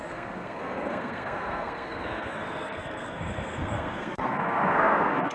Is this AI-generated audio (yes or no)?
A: yes